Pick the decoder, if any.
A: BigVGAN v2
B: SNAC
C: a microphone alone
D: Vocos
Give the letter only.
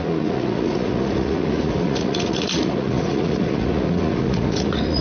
D